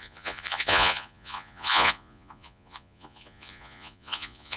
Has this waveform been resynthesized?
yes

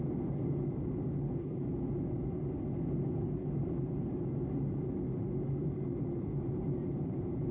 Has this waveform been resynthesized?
no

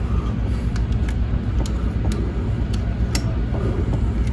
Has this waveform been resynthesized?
no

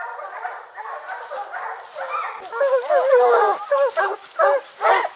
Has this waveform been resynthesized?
no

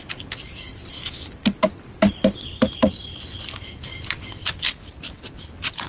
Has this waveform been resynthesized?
no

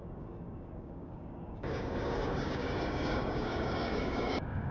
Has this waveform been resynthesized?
yes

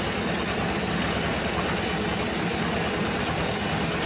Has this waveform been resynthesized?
no